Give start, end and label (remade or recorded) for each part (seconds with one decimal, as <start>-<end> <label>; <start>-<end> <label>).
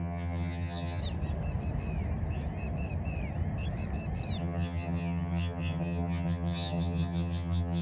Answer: 0.0-1.0 remade; 1.0-4.4 recorded; 4.4-7.8 remade